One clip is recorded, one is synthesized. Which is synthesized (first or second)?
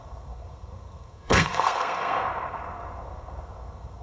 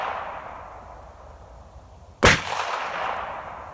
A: first